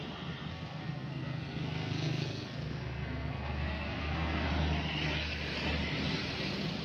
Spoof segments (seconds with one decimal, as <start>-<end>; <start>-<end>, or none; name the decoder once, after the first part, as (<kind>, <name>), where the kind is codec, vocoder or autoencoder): 0.5-4.5 (codec, SNAC)